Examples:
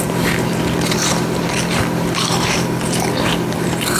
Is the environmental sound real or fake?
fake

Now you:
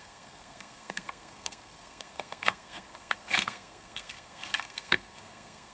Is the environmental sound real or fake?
fake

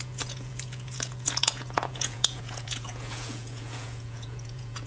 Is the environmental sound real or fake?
fake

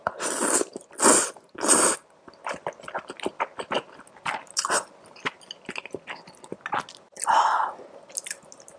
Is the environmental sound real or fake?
real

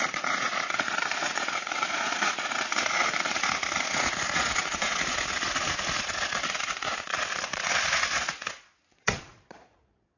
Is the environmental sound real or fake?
fake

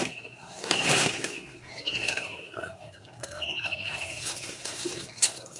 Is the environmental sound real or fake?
fake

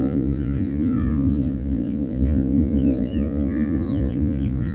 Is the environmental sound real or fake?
fake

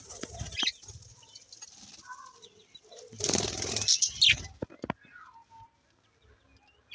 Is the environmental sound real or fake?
real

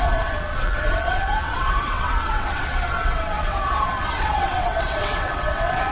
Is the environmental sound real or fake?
fake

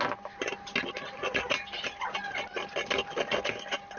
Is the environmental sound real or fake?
real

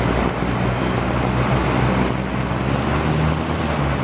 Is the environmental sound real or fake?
real